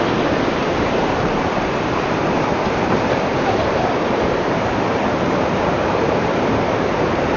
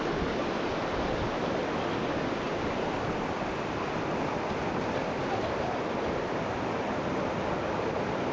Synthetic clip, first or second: first